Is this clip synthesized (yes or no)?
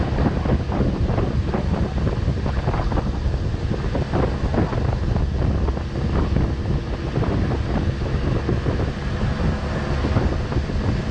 no